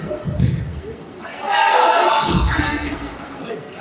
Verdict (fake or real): fake